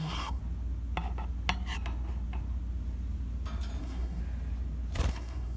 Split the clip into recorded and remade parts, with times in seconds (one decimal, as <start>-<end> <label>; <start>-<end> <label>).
0.0-0.4 remade; 0.4-3.8 recorded; 3.8-4.2 remade; 4.2-5.1 recorded; 5.1-5.6 remade